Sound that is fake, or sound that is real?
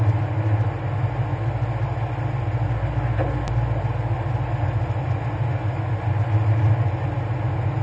real